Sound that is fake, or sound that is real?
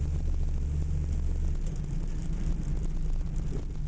real